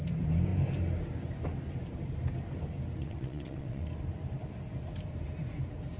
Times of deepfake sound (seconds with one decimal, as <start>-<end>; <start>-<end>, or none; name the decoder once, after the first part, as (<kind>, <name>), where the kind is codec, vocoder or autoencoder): 3.0-3.9 (vocoder, WaveNeXt)